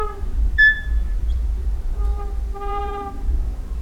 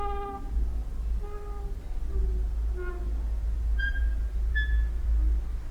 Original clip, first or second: second